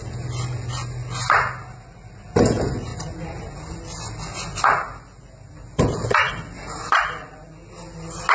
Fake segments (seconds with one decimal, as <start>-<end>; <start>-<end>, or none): none